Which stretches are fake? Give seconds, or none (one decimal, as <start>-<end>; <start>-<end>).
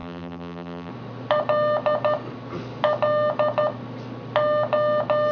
0.0-0.9